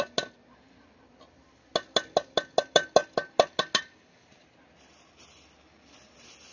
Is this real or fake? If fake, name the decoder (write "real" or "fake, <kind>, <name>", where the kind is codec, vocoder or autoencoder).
real